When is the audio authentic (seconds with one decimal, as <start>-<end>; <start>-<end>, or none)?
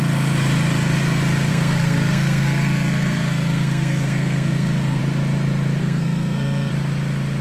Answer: 0.0-1.5; 5.0-5.8; 6.7-7.4